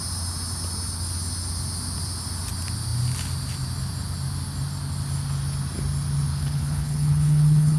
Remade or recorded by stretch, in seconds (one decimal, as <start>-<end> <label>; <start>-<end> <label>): 0.0-6.3 recorded; 6.3-7.8 remade